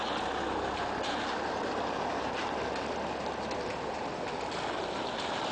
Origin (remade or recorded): recorded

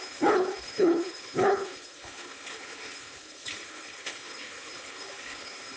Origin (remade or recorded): remade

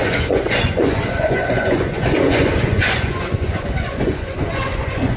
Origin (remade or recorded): remade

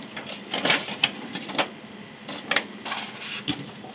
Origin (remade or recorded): recorded